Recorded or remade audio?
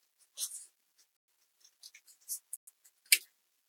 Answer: recorded